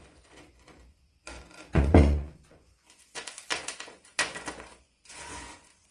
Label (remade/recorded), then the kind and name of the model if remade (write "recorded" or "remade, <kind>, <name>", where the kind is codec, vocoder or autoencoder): remade, vocoder, Vocos